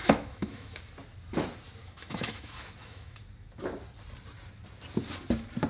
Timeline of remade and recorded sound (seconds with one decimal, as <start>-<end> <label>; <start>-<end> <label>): 0.0-0.8 remade; 0.8-1.8 recorded; 1.8-3.2 remade; 3.2-5.7 recorded